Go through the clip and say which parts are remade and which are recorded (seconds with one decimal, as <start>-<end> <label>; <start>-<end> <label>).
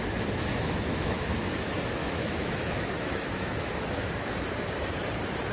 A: 0.0-0.5 recorded; 0.5-1.5 remade; 1.5-2.0 recorded; 2.0-4.3 remade; 4.3-5.5 recorded